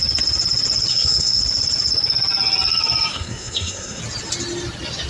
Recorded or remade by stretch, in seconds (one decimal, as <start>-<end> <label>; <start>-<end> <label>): 0.0-0.9 recorded; 0.9-1.4 remade; 1.4-3.1 recorded; 3.1-4.0 remade; 4.0-5.1 recorded